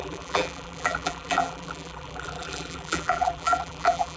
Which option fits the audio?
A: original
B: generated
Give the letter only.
B